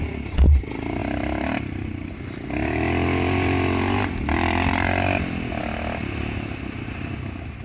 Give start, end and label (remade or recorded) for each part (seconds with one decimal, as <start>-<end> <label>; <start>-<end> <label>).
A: 0.0-7.6 recorded